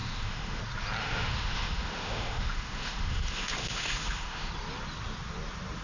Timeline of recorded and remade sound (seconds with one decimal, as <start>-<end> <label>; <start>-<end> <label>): 0.0-0.6 remade; 0.6-1.0 recorded; 1.0-4.5 remade; 4.5-5.8 recorded